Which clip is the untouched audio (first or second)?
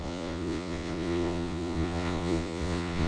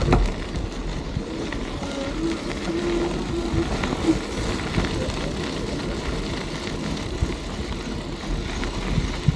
second